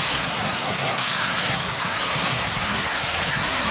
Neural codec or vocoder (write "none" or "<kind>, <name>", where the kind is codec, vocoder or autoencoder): codec, SNAC